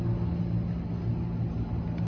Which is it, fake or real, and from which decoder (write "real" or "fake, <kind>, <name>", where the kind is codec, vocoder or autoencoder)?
real